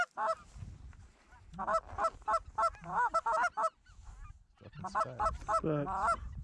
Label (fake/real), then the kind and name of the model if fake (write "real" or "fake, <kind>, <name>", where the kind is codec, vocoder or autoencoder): real